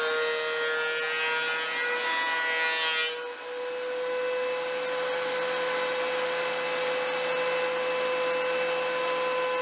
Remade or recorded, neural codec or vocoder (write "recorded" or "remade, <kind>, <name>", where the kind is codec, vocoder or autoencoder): recorded